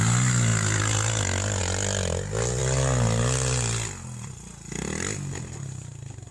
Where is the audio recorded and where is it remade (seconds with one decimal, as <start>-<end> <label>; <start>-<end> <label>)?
0.0-6.3 recorded